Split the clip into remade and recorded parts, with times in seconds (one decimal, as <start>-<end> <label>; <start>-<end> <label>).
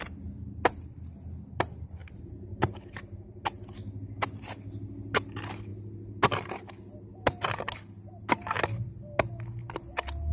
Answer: 0.0-10.3 recorded